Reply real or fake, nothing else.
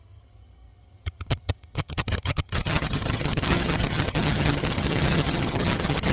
fake